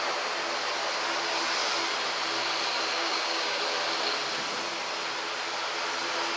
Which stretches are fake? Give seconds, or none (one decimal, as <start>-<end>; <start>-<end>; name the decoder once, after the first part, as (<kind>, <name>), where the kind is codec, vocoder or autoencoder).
3.0-3.6 (codec, DAC)